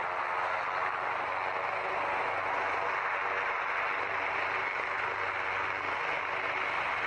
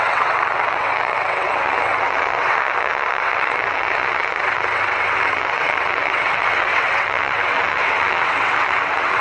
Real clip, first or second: first